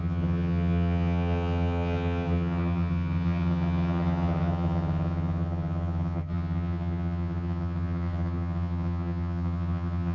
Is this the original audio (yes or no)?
no